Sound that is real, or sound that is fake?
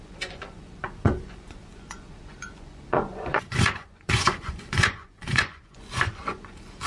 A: fake